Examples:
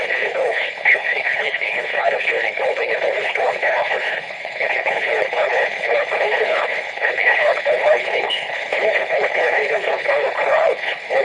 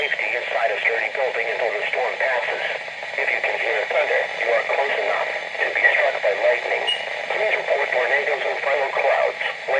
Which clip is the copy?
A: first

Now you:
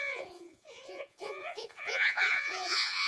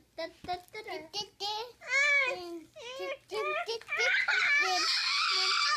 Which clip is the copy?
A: first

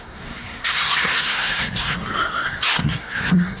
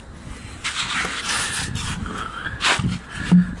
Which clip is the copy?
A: first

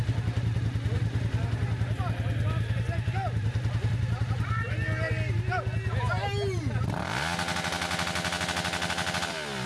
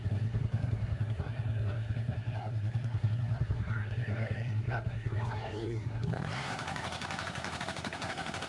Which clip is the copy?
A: second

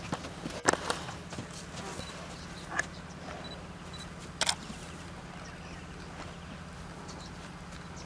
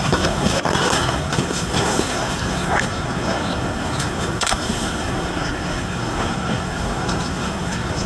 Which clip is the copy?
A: second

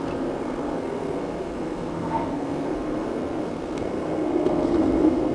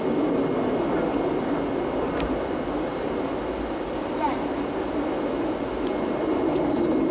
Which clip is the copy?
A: first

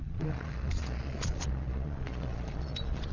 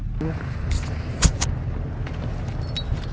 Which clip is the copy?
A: first